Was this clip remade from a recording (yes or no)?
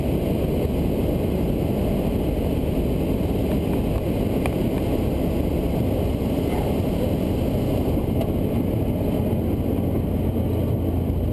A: no